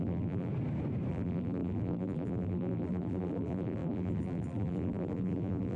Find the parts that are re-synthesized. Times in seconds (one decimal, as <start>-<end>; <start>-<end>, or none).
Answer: 0.0-0.5; 1.1-5.8